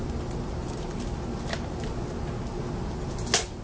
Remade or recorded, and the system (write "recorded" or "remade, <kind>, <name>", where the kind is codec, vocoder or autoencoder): recorded